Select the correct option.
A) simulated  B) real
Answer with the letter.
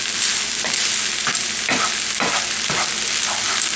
B